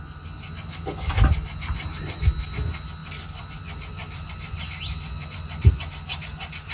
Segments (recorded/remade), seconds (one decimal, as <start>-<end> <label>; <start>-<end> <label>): 0.0-3.0 recorded; 3.0-4.3 remade; 4.3-6.7 recorded

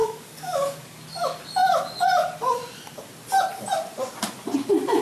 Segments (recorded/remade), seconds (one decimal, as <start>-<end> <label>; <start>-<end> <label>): 0.0-1.0 remade; 1.0-5.0 recorded